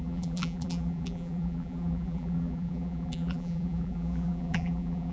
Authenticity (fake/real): fake